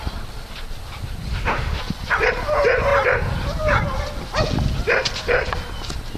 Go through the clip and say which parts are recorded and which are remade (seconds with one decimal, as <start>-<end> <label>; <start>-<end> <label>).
0.0-1.3 recorded; 1.3-1.8 remade; 1.8-6.2 recorded